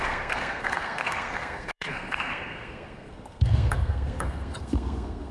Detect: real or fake fake